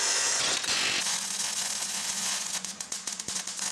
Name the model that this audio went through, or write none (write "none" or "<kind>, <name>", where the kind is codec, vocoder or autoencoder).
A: vocoder, Vocos